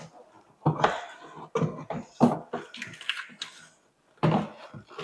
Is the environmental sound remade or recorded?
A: recorded